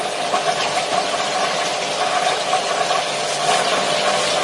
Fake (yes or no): no